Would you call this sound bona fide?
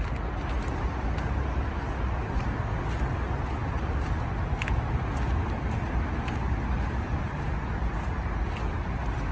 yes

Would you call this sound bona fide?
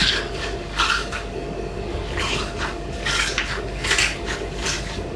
no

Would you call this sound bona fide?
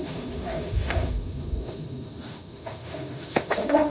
no